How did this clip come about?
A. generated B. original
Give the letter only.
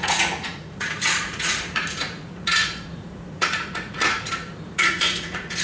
A